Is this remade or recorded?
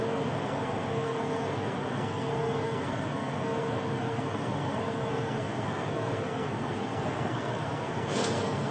remade